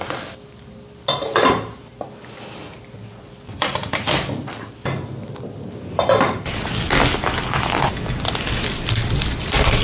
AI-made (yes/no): no